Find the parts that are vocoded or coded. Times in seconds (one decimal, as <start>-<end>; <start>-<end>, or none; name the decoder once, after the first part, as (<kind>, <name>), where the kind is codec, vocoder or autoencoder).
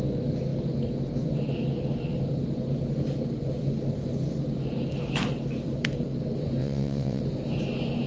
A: 6.6-7.2 (vocoder, WaveNeXt)